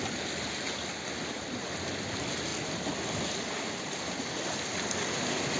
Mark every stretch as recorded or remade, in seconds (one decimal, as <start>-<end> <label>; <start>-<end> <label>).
0.0-5.6 recorded

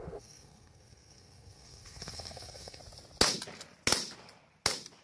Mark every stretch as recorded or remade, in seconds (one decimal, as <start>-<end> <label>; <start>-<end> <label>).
0.0-2.8 remade; 2.8-5.0 recorded

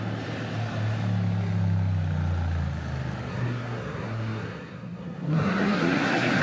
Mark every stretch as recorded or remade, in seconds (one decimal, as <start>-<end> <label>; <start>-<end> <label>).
0.0-3.3 recorded; 3.3-6.4 remade

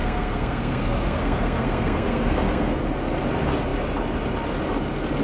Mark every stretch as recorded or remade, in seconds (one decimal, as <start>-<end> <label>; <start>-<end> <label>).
0.0-2.8 remade; 2.8-5.2 recorded

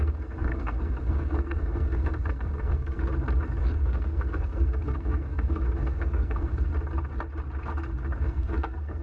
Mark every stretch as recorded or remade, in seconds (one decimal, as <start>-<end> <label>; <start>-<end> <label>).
0.0-3.1 remade; 3.1-3.6 recorded; 3.6-6.7 remade; 6.7-8.2 recorded; 8.2-9.0 remade

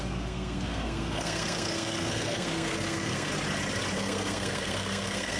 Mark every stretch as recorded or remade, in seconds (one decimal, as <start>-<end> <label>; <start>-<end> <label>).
0.0-3.3 remade; 3.3-3.9 recorded; 3.9-5.4 remade

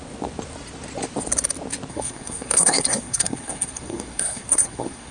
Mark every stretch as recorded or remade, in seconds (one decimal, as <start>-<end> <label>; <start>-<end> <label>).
0.0-1.9 recorded; 1.9-5.1 remade